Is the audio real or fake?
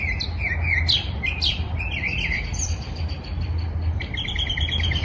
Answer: fake